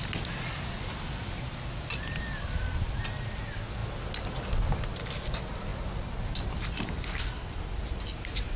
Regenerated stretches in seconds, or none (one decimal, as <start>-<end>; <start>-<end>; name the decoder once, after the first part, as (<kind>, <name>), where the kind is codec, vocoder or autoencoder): none